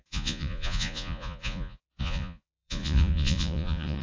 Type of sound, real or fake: fake